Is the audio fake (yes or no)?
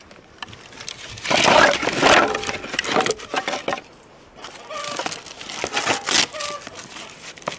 no